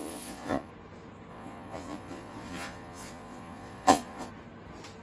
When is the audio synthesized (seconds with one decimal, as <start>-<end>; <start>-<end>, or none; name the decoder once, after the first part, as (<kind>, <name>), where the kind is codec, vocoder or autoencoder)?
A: 0.0-0.7 (vocoder, Vocos); 1.3-4.3